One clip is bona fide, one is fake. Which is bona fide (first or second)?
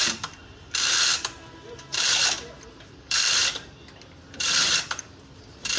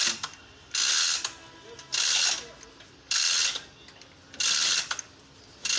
second